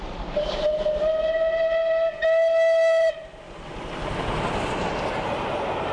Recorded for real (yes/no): yes